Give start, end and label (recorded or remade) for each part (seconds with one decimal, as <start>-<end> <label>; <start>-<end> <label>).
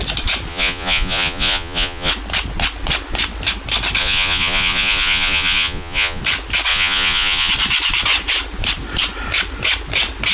0.0-0.5 recorded; 0.5-2.1 remade; 2.1-4.0 recorded; 4.0-6.2 remade; 6.2-6.7 recorded; 6.7-7.5 remade; 7.5-10.3 recorded